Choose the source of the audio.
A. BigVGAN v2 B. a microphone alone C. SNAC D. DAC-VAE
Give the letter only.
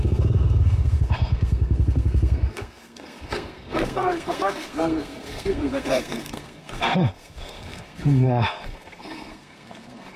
C